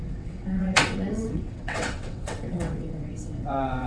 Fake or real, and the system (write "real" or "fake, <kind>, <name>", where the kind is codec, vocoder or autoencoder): fake, vocoder, WaveNeXt